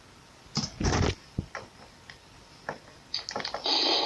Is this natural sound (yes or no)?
yes